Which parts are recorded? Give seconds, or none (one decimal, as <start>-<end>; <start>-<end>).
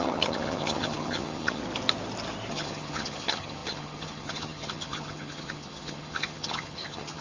1.6-2.5